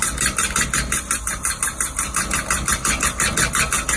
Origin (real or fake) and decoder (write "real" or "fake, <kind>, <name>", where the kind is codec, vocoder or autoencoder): real